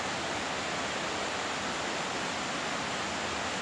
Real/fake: real